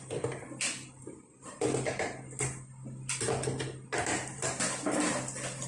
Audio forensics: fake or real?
real